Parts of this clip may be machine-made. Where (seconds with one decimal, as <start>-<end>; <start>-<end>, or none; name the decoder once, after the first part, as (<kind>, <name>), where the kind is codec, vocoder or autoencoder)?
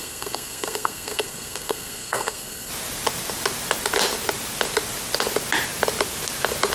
0.0-2.7 (codec, SNAC)